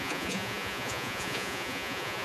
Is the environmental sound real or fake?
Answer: fake